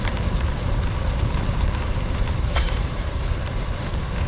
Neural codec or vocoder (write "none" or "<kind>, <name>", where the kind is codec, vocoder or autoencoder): vocoder, BigVGAN v2